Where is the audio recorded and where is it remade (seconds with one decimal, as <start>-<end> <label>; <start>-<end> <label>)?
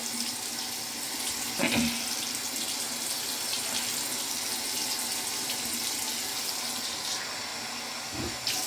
0.0-8.7 recorded